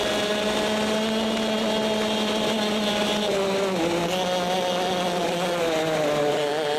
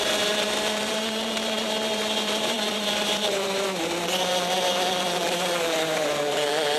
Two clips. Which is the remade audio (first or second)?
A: second